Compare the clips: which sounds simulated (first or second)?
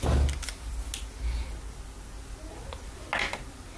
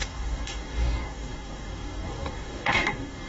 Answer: second